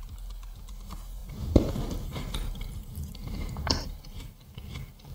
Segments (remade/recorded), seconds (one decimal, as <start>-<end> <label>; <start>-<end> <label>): 0.0-1.2 recorded; 1.2-4.3 remade; 4.3-5.1 recorded